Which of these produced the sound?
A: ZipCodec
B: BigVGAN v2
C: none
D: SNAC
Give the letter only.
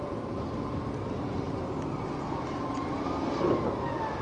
B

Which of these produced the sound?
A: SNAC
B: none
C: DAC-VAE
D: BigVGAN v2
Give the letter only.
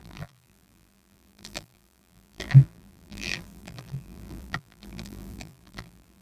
D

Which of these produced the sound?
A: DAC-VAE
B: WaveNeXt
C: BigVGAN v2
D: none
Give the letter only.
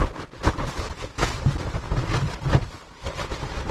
D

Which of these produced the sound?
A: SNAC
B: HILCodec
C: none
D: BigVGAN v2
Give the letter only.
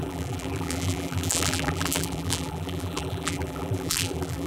D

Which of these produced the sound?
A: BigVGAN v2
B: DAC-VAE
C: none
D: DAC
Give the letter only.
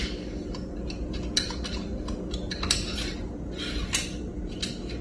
C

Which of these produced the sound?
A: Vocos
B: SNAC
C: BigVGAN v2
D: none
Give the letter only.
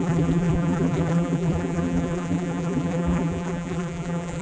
C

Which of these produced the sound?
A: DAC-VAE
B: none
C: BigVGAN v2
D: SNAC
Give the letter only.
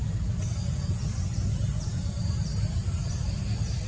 B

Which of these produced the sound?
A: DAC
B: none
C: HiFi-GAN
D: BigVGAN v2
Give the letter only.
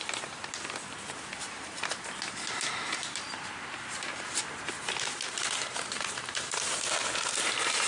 D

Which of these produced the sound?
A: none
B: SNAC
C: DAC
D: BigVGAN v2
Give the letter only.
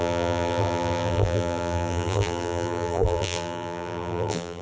D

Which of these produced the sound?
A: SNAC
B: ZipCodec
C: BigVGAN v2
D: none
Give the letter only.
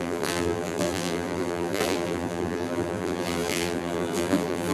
C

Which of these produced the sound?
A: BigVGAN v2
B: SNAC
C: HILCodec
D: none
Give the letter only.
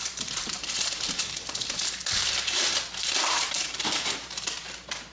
A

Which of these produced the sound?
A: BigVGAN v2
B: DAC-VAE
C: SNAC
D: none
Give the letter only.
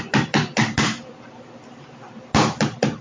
A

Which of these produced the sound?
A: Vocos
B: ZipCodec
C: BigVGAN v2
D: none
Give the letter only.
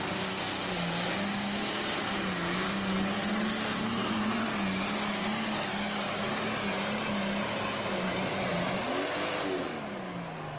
D